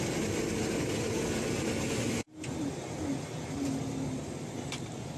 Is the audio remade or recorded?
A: recorded